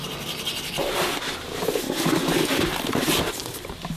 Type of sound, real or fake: real